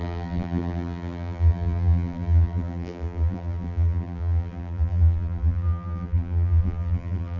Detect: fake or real fake